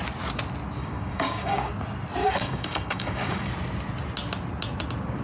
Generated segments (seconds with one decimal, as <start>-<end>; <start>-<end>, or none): 0.8-1.7; 2.2-3.5

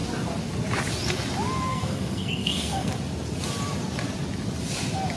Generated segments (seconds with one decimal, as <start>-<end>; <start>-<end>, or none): 1.7-2.9